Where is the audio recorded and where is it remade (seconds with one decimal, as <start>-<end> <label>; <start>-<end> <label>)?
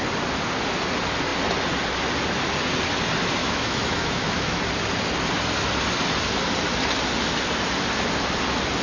0.0-3.4 recorded; 3.4-4.6 remade; 4.6-8.8 recorded